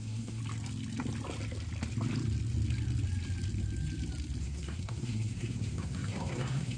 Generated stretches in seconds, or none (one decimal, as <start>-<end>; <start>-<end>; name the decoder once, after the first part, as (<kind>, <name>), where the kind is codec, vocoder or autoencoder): 0.0-0.4 (codec, SNAC); 4.4-6.8